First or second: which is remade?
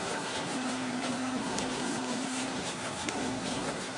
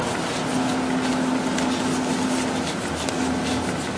first